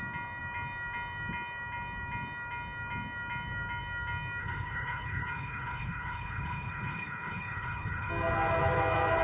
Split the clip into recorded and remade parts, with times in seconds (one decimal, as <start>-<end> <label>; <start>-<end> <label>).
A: 0.0-4.4 recorded; 4.4-8.1 remade; 8.1-9.2 recorded